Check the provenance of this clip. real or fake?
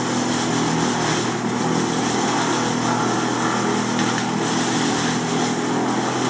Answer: real